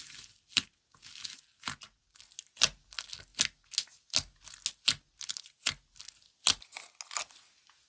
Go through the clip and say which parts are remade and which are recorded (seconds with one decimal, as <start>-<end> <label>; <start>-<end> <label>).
0.0-7.9 recorded